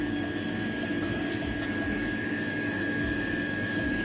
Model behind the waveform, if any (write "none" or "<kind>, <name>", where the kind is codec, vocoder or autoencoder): codec, DAC